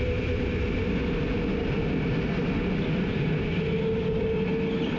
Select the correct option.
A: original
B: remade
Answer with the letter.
A